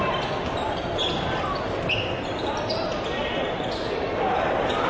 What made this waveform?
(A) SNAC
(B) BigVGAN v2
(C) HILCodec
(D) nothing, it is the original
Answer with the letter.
D